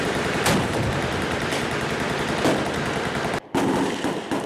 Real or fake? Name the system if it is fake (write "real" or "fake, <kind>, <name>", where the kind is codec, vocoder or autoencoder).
real